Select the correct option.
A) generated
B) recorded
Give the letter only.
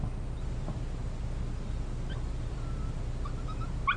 B